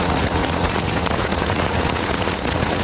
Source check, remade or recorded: remade